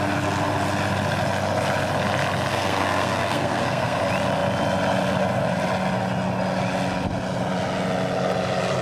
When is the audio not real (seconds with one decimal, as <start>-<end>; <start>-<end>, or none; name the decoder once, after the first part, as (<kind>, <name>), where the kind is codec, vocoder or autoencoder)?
2.5-4.0 (codec, SNAC)